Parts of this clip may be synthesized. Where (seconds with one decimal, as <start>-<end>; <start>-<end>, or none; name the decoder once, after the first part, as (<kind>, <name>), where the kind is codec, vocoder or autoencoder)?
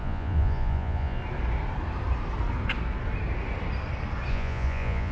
0.0-1.2 (vocoder, Vocos); 4.3-5.1